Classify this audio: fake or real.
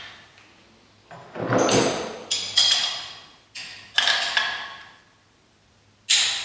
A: real